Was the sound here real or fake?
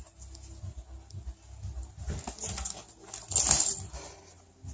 real